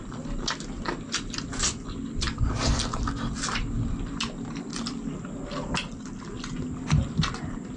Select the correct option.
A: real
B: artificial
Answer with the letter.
A